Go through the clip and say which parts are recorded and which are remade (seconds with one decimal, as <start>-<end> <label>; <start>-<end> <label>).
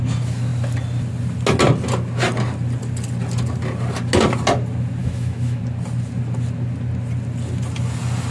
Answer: 0.0-5.0 recorded; 5.0-5.6 remade; 5.6-8.3 recorded